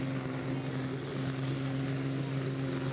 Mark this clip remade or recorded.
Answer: recorded